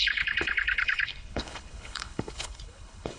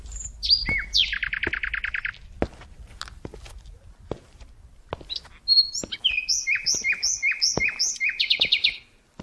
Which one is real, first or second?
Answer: second